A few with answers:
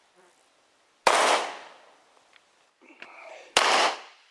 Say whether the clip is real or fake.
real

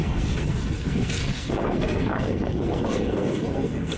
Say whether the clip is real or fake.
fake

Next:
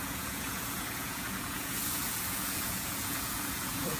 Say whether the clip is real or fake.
fake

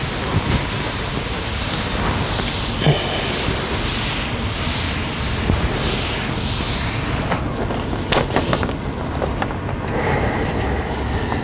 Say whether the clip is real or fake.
real